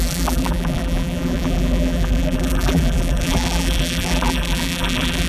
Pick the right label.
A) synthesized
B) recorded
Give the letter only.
A